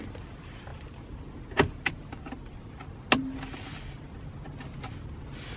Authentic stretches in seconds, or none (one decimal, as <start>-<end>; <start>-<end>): 0.0-5.6